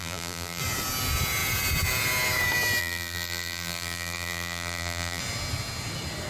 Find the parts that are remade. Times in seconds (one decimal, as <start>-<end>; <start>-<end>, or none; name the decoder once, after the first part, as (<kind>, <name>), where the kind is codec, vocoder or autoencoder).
0.0-0.6 (vocoder, BigVGAN v2); 2.8-5.2